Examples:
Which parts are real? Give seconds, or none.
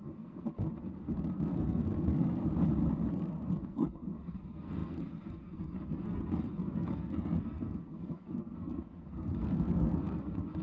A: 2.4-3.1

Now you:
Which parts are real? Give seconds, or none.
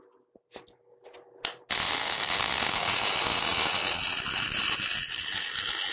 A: 0.0-1.9; 2.9-5.9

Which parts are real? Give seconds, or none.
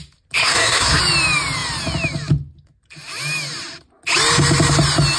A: 0.0-0.4; 1.0-5.2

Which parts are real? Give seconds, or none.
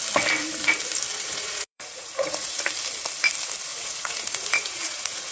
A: 0.0-1.1; 2.6-3.7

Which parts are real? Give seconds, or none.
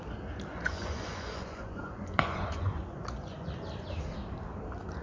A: 0.0-0.5; 3.5-5.0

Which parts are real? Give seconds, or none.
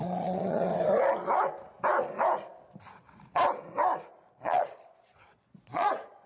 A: 0.7-4.3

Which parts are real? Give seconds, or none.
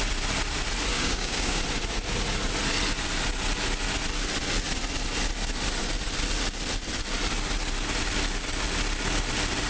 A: 0.0-0.9; 1.6-9.7